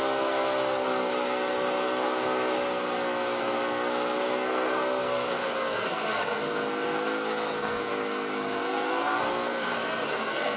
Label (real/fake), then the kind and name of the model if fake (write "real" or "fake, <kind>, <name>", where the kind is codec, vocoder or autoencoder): fake, codec, SNAC